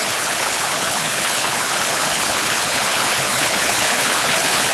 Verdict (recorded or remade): remade